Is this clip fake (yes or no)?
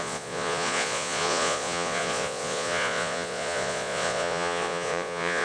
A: yes